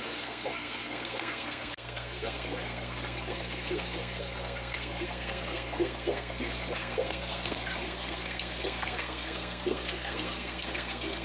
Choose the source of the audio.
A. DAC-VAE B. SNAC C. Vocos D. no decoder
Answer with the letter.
B